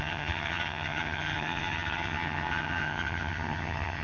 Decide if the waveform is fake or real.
fake